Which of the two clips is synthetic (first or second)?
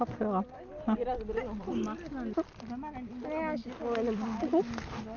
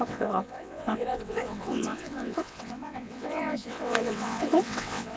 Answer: second